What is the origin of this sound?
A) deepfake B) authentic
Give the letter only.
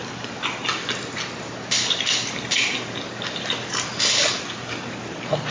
B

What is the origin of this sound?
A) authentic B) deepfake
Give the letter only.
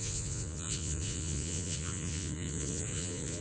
B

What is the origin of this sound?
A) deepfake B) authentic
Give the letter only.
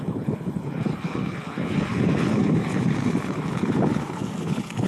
A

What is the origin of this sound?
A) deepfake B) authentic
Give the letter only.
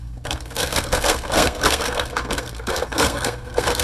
A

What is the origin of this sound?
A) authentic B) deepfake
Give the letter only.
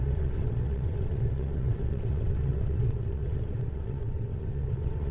B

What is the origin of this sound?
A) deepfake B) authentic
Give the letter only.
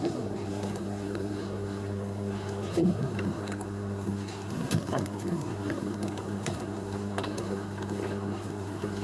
A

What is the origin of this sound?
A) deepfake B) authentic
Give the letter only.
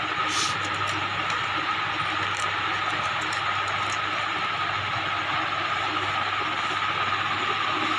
B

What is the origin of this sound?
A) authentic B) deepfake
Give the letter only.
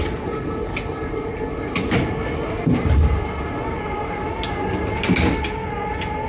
A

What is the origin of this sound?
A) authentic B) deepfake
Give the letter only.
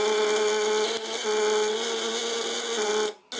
A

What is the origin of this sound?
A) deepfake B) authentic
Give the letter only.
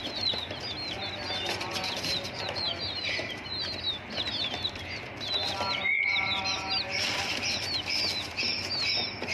B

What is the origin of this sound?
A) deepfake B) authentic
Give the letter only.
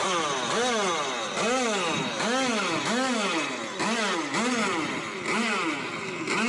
B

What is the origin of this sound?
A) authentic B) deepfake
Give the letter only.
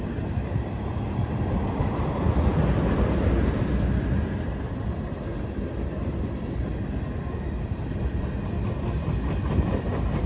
A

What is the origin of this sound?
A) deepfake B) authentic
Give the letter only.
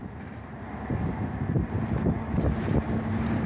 B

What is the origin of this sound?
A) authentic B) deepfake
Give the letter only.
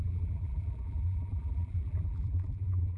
B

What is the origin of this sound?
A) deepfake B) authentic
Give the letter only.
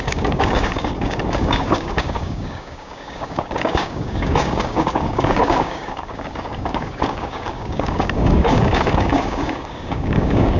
A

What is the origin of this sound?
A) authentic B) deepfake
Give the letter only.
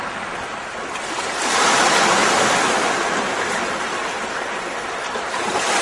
A